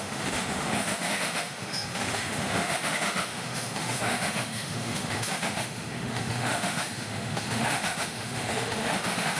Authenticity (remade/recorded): remade